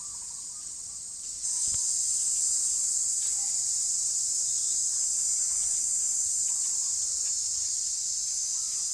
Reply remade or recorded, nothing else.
recorded